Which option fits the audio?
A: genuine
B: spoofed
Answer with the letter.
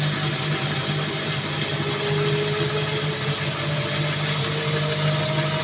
A